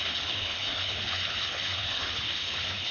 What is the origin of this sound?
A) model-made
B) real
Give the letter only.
A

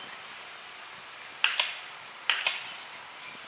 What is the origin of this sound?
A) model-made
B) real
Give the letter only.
B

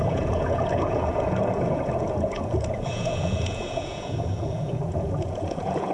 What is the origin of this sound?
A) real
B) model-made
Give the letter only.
B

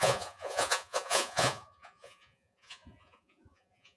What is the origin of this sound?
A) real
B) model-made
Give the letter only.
B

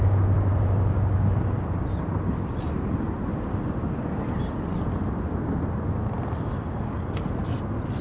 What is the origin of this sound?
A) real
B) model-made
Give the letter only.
A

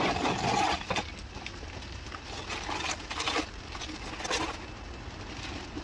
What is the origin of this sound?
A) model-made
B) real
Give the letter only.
B